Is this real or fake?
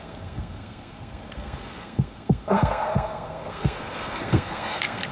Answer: fake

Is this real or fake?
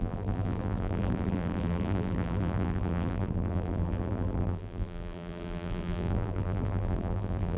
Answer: fake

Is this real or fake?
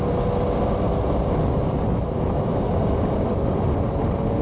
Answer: real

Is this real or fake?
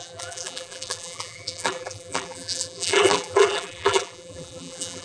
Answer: fake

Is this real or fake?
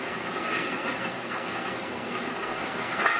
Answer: fake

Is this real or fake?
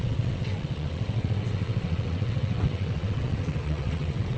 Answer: fake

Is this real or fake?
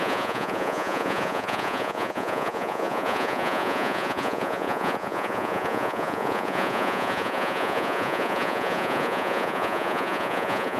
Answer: fake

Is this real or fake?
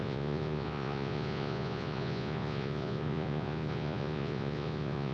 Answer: fake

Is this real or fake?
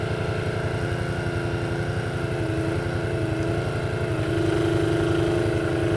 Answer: real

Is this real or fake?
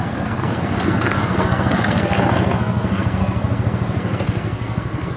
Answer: fake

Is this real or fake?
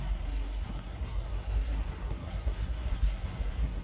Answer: fake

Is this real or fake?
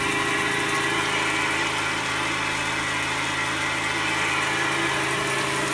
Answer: real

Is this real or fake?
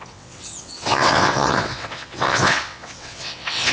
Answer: fake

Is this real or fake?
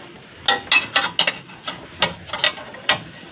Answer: real